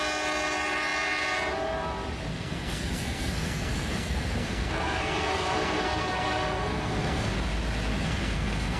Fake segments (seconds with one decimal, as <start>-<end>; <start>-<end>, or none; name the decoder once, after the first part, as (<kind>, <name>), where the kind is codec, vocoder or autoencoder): 2.3-7.3 (codec, SNAC); 7.9-8.8